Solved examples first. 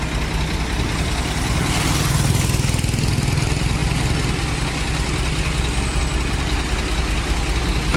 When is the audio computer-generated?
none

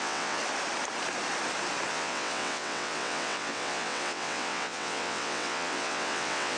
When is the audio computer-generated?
0.0-0.4 (vocoder, WaveNeXt); 1.9-6.6